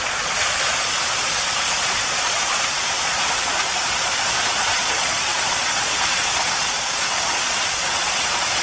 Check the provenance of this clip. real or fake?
fake